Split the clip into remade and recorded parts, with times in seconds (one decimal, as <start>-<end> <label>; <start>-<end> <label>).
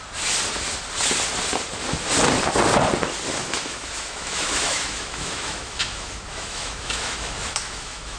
0.0-3.4 recorded; 3.4-8.2 remade